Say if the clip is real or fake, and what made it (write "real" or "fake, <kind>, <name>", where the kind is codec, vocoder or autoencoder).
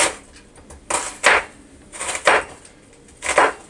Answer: real